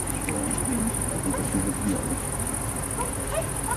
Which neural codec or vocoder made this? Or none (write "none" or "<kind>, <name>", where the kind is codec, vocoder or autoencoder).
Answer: none